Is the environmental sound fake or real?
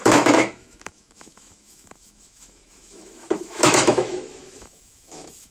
fake